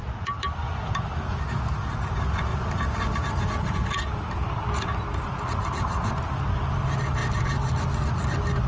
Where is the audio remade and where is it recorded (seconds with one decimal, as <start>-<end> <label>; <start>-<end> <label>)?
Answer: 0.0-1.3 remade; 1.3-2.5 recorded; 2.5-3.0 remade; 3.0-8.7 recorded